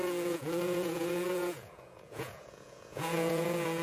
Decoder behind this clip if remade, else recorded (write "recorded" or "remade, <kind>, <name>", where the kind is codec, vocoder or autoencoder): remade, vocoder, Vocos